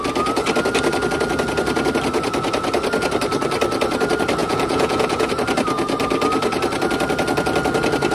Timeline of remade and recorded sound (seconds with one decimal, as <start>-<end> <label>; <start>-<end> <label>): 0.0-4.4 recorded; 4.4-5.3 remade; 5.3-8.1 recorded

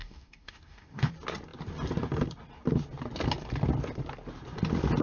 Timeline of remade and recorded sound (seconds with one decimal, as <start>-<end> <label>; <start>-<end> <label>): 0.0-1.1 remade; 1.1-5.0 recorded

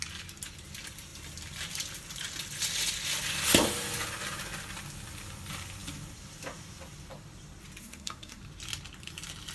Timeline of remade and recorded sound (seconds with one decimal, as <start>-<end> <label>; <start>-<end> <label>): 0.0-7.8 recorded; 7.8-8.4 remade; 8.4-9.5 recorded

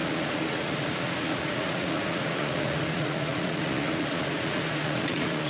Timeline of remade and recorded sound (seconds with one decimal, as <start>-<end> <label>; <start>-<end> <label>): 0.0-5.5 remade